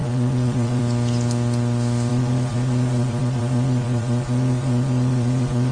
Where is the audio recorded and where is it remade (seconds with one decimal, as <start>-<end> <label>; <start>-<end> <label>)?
0.0-0.8 remade; 0.8-2.1 recorded; 2.1-5.7 remade